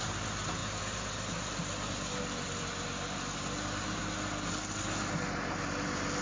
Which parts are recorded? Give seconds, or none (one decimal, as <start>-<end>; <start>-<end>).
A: 0.0-6.2